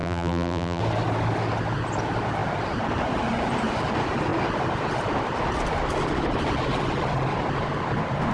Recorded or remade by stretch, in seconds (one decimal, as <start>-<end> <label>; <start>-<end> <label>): 0.0-0.8 remade; 0.8-8.3 recorded